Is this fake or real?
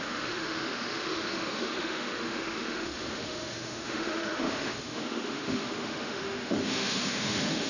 fake